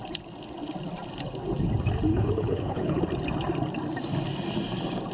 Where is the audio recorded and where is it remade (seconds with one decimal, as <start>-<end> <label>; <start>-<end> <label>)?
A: 0.0-2.1 recorded; 2.1-3.0 remade; 3.0-5.1 recorded